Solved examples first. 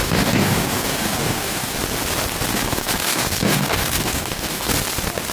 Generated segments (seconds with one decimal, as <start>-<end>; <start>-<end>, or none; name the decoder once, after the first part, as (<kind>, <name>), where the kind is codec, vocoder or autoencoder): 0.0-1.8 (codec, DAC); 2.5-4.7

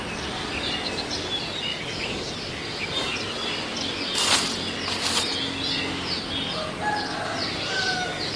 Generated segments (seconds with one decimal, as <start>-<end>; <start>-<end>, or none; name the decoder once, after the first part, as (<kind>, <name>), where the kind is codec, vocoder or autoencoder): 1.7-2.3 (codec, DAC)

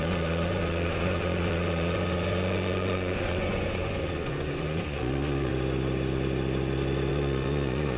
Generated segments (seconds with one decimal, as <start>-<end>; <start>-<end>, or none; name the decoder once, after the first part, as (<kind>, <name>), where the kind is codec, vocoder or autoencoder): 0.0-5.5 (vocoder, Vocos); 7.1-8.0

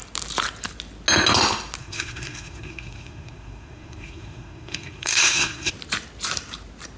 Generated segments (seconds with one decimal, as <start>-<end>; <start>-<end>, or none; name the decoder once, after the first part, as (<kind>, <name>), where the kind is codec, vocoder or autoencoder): 1.8-5.7 (codec, SNAC)

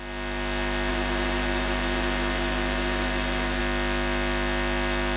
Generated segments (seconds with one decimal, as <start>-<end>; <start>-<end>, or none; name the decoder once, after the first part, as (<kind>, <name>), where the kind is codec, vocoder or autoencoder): 0.9-3.6 (vocoder, BigVGAN v2)

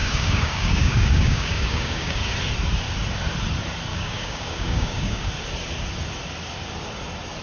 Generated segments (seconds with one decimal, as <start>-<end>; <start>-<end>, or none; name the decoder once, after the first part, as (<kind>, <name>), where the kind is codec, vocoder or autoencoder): 0.0-2.3 (codec, DAC); 3.9-5.3

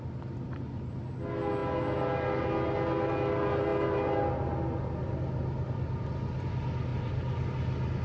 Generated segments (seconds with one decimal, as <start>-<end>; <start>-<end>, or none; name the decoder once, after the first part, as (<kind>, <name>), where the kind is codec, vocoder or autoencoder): 6.9-7.4 (vocoder, BigVGAN v2)

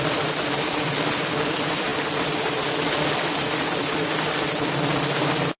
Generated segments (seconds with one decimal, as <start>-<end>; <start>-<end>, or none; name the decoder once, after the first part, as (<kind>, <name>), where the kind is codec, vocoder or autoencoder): 0.0-5.6 (vocoder, BigVGAN v2)